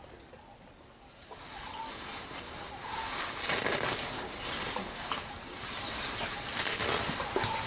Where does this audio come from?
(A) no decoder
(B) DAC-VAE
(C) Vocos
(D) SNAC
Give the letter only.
A